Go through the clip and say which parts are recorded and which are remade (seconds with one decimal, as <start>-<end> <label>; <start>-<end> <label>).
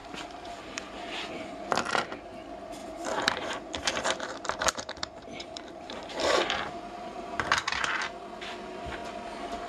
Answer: 0.0-1.3 remade; 1.3-2.8 recorded; 2.8-7.9 remade; 7.9-9.7 recorded